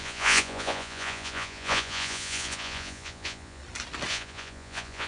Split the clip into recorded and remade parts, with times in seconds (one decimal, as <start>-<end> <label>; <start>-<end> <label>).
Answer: 0.0-3.6 remade; 3.6-4.1 recorded; 4.1-5.1 remade